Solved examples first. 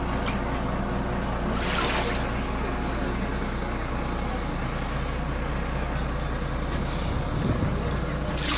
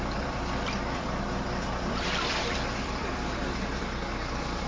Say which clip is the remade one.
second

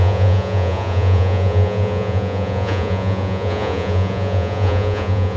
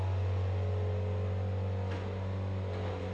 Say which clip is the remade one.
first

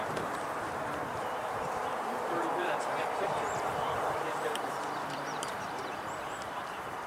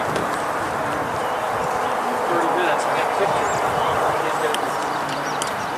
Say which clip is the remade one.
first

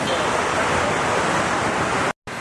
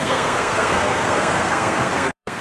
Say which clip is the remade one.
second